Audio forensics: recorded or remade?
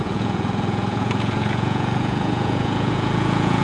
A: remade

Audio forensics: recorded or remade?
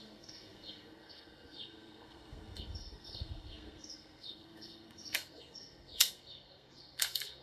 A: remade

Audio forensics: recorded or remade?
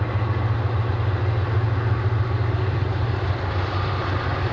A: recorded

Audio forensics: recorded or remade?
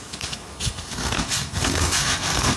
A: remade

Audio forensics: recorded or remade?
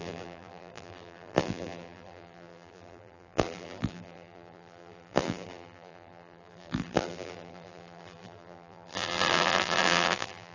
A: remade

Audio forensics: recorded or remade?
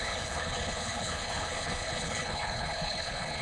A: remade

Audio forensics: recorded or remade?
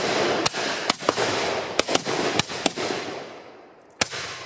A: recorded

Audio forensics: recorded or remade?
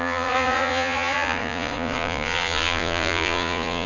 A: remade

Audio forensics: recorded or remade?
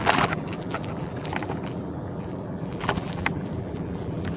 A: remade